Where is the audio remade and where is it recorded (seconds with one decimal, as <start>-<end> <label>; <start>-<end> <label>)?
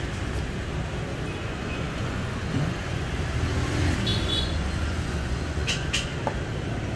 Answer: 0.0-1.4 recorded; 1.4-3.2 remade; 3.2-4.1 recorded; 4.1-6.2 remade; 6.2-7.0 recorded